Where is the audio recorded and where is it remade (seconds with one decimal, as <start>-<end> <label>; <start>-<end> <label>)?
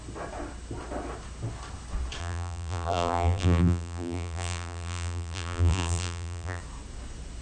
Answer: 0.0-2.2 recorded; 2.2-6.6 remade; 6.6-7.4 recorded